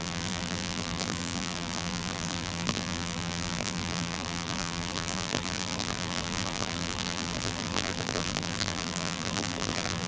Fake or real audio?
fake